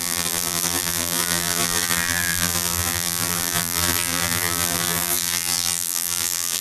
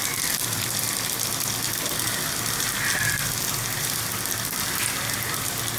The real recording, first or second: second